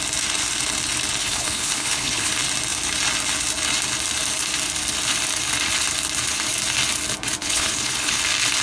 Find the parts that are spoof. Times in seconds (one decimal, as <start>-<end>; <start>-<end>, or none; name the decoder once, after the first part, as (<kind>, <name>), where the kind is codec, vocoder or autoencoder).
1.2-2.3 (codec, HILCodec); 7.4-8.2